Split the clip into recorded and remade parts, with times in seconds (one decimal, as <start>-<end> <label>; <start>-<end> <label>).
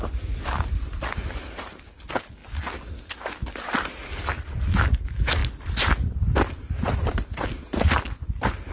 0.0-8.7 recorded